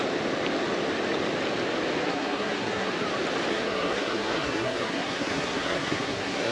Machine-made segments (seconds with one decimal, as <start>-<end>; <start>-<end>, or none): 2.0-2.9; 3.5-6.5